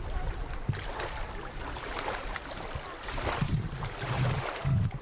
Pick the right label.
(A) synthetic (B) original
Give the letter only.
B